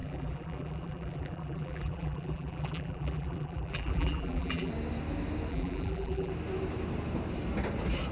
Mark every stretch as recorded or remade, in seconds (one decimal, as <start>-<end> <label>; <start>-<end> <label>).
0.0-4.7 remade; 4.7-5.5 recorded; 5.5-6.3 remade; 6.3-8.1 recorded